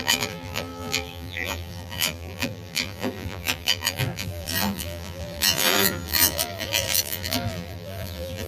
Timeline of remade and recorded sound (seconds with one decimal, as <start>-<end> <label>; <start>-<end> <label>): 0.0-8.5 remade